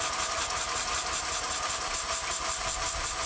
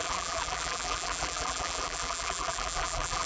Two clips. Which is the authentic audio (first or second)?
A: first